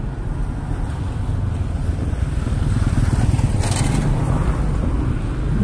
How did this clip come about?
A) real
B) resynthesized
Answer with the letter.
A